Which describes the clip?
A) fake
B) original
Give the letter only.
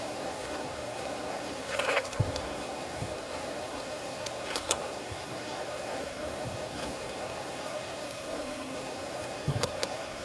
A